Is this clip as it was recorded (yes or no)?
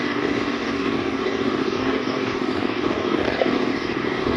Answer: no